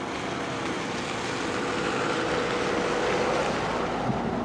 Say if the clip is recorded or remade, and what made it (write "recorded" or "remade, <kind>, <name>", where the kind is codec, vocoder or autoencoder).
recorded